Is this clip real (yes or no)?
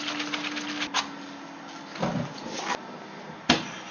yes